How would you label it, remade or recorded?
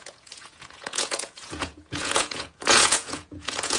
remade